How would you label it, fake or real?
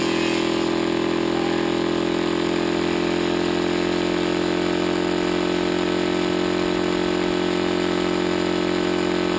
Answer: real